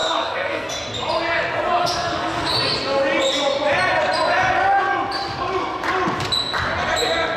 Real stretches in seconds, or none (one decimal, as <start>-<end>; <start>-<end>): 0.7-1.8; 2.5-7.4